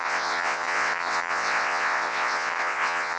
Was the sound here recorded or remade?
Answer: remade